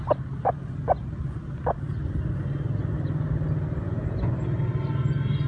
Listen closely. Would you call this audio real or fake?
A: real